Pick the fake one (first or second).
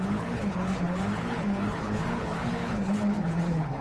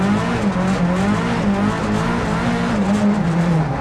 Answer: first